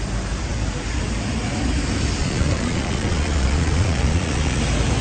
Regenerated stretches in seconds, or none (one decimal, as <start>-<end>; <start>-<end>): 2.2-4.6